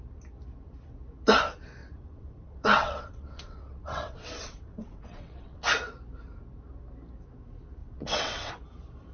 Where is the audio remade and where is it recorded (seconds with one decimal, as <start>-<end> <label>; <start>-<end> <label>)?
0.0-1.8 recorded; 1.8-5.6 remade; 5.6-7.8 recorded; 7.8-8.5 remade; 8.5-9.1 recorded